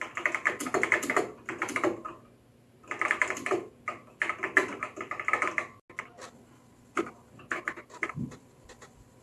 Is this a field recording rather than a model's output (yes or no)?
yes